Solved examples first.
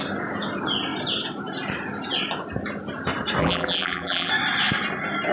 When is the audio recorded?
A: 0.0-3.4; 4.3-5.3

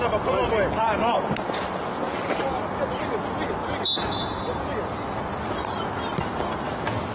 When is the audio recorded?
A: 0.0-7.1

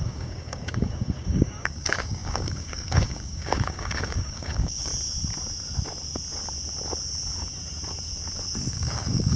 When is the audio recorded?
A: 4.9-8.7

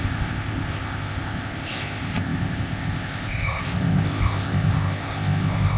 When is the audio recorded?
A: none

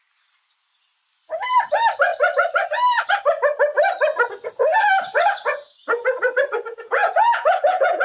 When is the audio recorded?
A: 0.0-6.7

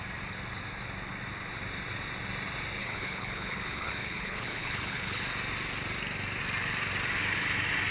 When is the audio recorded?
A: 0.0-2.8; 5.2-7.9

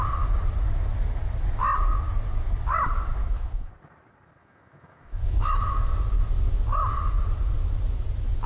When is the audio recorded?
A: 0.0-3.2; 3.7-4.4; 5.5-8.5